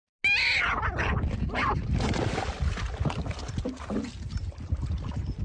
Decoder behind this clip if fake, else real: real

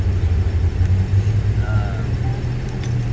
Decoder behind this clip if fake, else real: real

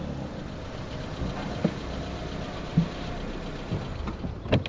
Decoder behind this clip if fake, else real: real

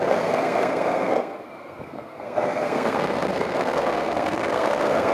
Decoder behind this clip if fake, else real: fake, codec, SNAC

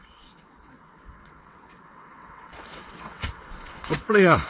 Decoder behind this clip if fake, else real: fake, vocoder, WaveNeXt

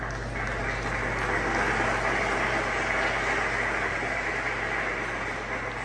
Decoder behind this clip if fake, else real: real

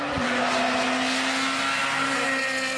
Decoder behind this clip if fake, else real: real